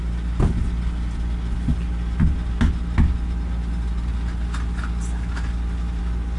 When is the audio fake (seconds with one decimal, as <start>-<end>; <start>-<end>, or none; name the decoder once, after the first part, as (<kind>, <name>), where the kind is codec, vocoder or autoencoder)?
none